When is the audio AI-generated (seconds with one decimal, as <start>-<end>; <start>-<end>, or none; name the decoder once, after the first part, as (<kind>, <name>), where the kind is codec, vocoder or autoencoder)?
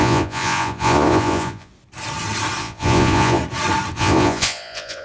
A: 0.0-1.7 (vocoder, Vocos); 2.6-3.4; 3.9-5.0